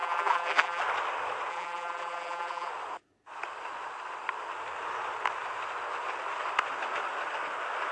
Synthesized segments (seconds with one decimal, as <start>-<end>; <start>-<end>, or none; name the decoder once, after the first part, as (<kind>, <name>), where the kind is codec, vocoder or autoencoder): 0.0-0.8 (vocoder, BigVGAN v2); 1.5-2.7